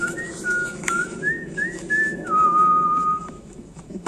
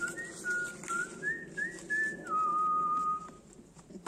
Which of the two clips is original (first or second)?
second